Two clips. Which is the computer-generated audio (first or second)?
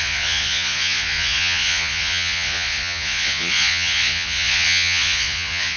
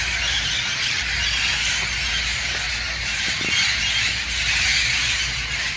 first